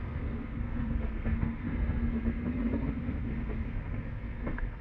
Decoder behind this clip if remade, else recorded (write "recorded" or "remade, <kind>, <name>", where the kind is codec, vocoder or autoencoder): remade, codec, SNAC